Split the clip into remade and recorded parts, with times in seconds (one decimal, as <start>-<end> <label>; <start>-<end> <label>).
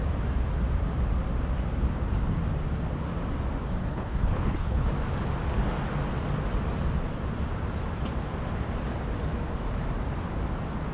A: 0.0-3.8 recorded; 3.8-4.9 remade; 4.9-10.9 recorded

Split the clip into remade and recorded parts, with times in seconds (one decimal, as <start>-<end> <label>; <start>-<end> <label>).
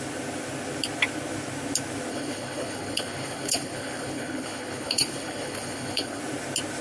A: 0.0-2.1 recorded; 2.1-6.2 remade; 6.2-6.8 recorded